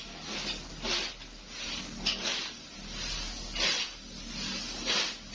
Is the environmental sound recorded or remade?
recorded